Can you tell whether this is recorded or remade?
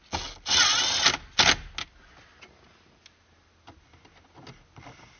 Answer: recorded